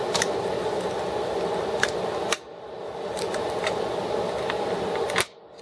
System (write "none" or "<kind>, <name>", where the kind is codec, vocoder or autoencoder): none